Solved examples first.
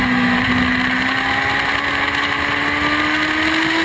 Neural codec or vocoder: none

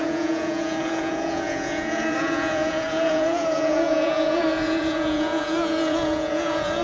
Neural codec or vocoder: vocoder, Vocos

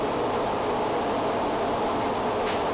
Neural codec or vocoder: none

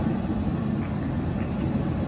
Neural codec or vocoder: none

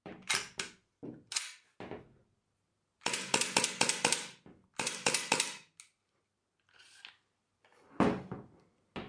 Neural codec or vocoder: none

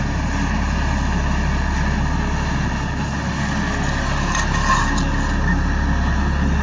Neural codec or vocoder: none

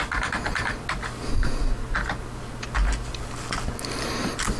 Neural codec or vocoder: none